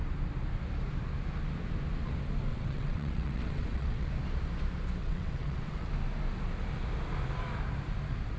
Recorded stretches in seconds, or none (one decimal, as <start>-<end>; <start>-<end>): 0.0-2.5; 4.1-5.0; 5.9-8.4

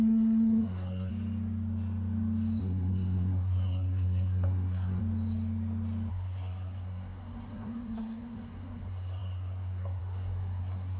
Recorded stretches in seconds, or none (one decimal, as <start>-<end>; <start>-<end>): 1.1-2.6; 5.0-6.1

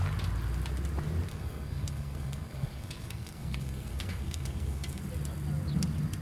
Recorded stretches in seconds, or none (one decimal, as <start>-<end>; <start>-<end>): 0.0-1.3; 5.0-6.2

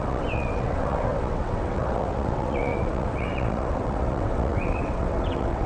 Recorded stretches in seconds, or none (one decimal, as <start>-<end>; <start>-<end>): none

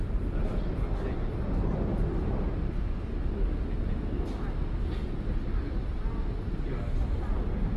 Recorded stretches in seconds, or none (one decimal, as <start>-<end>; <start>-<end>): 0.0-7.8

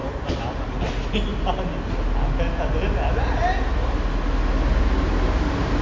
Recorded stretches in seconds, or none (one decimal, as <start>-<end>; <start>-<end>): 0.9-5.8